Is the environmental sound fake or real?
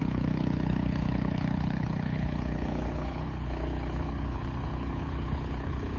fake